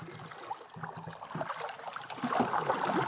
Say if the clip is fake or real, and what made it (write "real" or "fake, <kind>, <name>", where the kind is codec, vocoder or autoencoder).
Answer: real